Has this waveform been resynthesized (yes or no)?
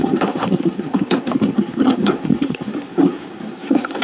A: yes